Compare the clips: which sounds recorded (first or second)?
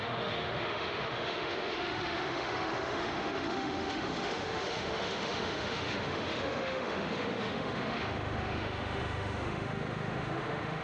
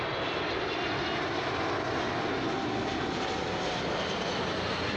second